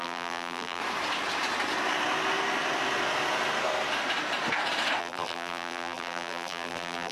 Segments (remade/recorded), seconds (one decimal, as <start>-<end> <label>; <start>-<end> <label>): 0.0-0.8 remade; 0.8-5.0 recorded; 5.0-7.1 remade